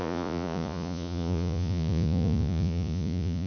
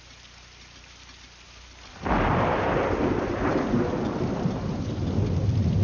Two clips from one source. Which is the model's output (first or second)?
first